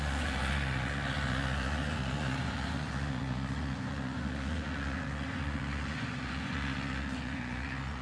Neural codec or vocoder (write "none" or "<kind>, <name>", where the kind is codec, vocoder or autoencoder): vocoder, Vocos